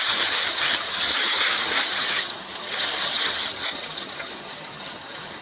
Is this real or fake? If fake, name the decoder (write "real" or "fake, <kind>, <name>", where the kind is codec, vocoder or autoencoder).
fake, vocoder, HiFi-GAN